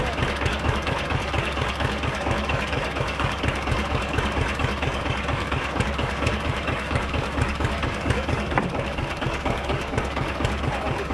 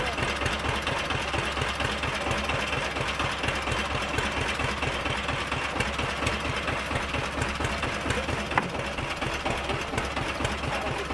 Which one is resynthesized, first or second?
first